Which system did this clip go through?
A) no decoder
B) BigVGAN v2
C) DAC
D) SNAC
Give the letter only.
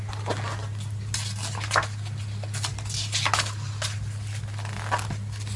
A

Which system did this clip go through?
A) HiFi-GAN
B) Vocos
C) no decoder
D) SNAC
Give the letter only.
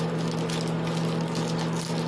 C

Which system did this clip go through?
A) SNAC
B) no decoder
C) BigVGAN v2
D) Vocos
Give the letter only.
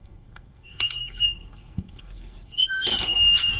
A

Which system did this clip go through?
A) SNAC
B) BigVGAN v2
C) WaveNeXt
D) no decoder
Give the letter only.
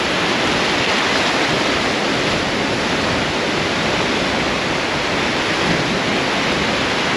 D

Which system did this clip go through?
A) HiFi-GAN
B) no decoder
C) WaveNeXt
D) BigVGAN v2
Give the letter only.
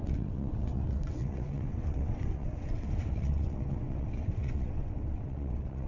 C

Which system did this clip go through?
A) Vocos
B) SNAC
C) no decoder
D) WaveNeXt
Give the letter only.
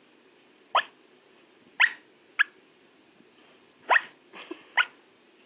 C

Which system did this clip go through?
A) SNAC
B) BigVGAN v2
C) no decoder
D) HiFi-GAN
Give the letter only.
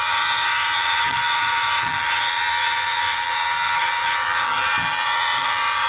D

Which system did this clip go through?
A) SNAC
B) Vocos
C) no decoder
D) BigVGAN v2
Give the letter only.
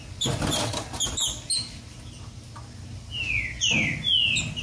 C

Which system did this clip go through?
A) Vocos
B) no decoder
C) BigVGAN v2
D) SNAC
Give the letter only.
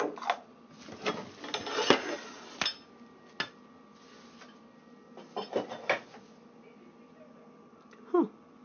B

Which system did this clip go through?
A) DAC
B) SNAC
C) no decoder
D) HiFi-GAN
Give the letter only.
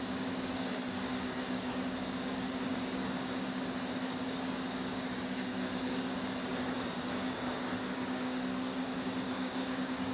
A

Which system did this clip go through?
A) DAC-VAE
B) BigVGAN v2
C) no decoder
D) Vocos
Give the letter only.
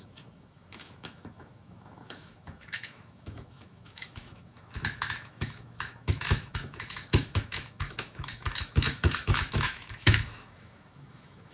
A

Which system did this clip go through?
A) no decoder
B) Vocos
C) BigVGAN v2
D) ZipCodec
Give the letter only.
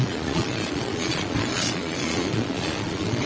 B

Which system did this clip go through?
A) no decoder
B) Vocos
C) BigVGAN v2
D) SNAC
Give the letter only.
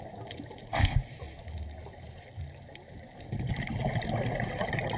A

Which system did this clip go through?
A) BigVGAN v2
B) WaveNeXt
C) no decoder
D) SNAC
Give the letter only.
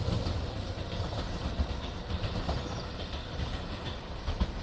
A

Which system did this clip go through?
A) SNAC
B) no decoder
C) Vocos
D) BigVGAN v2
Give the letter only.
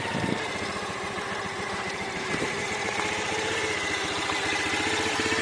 D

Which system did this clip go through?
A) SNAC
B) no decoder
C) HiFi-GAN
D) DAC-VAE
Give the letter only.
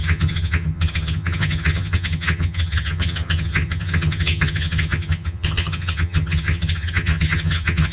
C